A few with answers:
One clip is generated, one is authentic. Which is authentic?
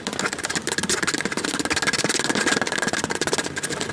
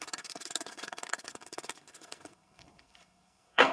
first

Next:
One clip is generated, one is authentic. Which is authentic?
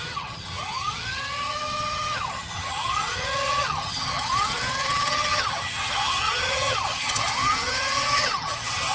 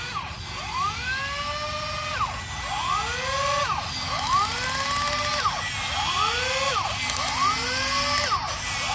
second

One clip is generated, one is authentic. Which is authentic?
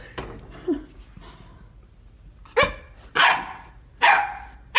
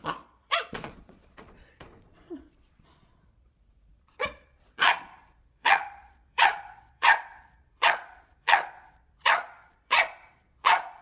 first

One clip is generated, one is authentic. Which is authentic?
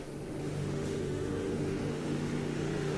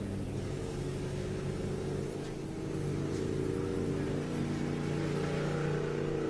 second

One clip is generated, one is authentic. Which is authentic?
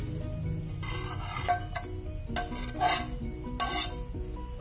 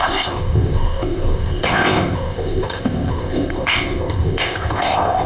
first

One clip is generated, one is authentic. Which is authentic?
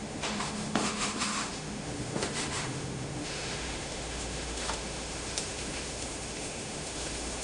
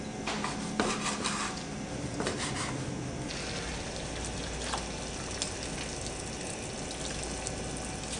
second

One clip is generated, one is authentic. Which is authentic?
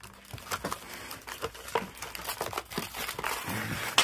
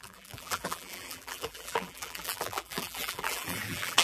first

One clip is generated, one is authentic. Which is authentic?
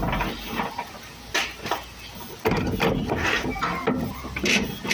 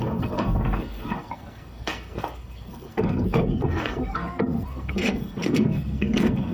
first